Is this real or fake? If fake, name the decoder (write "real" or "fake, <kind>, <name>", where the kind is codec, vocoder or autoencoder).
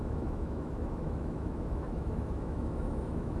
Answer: fake, autoencoder, DAC-VAE